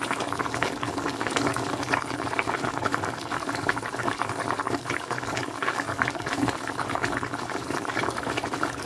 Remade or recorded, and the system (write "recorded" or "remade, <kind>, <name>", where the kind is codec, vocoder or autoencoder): remade, codec, DAC